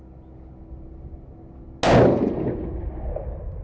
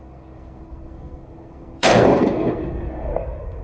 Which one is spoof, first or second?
second